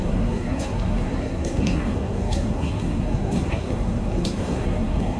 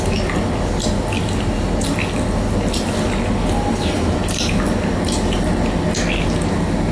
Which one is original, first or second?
second